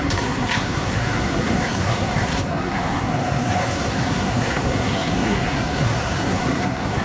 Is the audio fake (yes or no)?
yes